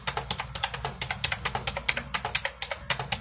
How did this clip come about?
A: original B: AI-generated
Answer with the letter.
A